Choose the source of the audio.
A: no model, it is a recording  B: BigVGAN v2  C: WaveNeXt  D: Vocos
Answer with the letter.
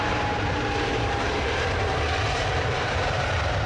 B